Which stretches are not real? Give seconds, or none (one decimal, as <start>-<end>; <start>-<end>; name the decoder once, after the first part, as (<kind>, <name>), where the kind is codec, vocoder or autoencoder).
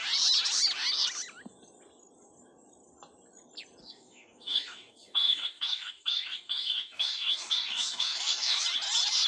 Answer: 3.8-8.6 (codec, DAC)